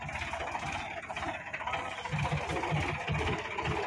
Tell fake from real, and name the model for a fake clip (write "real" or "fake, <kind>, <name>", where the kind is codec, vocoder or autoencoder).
real